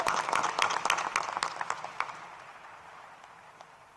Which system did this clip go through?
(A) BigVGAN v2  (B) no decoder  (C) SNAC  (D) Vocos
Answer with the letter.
B